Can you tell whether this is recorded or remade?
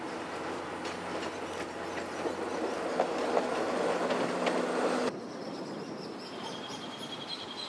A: recorded